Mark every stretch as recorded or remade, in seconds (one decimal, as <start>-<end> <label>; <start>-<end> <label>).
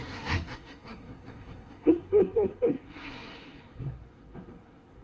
0.0-5.0 remade